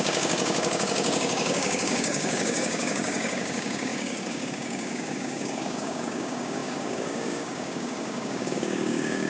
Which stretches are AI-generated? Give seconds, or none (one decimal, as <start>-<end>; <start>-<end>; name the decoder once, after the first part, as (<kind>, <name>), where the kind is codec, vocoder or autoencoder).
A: 0.0-9.3 (codec, DAC)